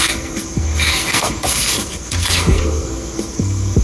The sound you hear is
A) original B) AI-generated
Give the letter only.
B